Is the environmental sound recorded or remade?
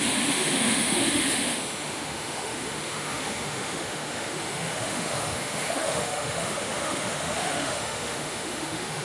remade